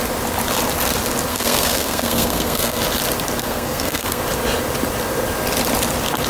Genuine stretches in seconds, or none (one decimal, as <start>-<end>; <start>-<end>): 0.0-1.3; 2.8-3.4; 4.2-6.3